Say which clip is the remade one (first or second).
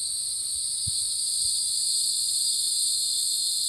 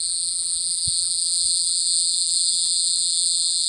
second